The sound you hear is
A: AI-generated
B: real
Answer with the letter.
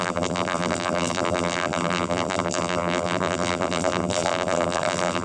A